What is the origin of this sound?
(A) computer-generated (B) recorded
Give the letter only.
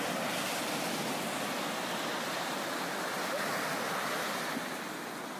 B